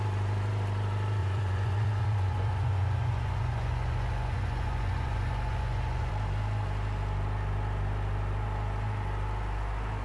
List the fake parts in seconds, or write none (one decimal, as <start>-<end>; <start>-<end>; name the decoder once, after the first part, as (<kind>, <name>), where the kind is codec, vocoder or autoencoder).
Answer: 1.2-6.1 (vocoder, Vocos)